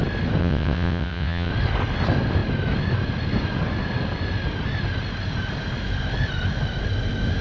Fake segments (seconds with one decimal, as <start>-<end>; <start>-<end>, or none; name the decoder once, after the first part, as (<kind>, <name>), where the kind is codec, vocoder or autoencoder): 0.4-1.5 (vocoder, WaveNeXt)